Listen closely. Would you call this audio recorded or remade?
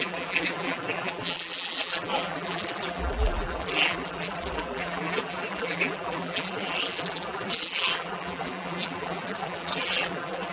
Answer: remade